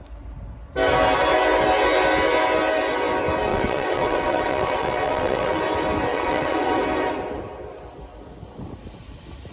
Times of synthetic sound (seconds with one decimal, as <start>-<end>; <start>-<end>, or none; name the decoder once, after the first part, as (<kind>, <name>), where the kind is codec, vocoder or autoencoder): 3.5-5.6 (vocoder, WaveNeXt); 6.1-6.8